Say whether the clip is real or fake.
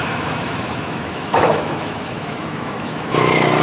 fake